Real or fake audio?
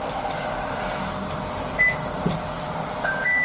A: real